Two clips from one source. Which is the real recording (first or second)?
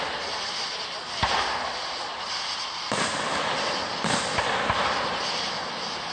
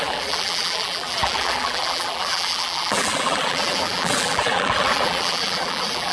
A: first